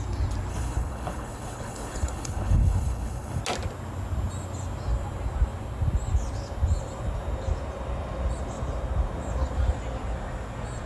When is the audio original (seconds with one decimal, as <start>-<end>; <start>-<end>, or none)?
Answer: 0.0-0.5; 3.4-10.9